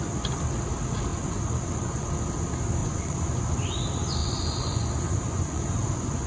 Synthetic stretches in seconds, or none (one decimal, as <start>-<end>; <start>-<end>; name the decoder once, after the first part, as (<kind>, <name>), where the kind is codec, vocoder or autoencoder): 1.1-2.1 (vocoder, Vocos); 2.8-3.4; 4.2-6.3